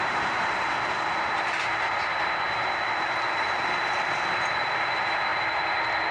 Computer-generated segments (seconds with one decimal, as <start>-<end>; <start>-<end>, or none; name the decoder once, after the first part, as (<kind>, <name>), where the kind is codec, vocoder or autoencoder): none